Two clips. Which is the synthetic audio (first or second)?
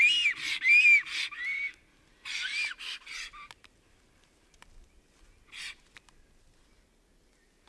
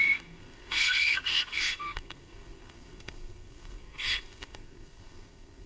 second